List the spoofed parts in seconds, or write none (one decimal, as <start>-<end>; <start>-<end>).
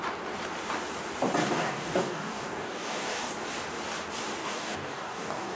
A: 1.4-3.3; 4.4-5.6